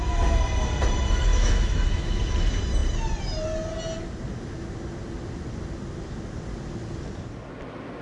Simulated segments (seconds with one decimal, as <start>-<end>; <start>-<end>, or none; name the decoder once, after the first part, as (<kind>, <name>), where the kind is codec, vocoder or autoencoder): 1.3-2.2 (autoencoder, DAC-VAE)